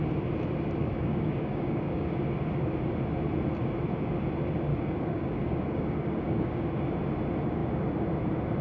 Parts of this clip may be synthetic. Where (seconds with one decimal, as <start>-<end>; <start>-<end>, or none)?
0.8-2.2; 4.7-6.7